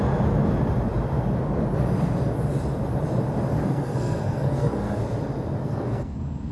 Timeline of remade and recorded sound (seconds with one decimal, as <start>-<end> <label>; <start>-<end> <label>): 0.0-3.6 recorded; 3.6-5.0 remade; 5.0-5.6 recorded; 5.6-6.5 remade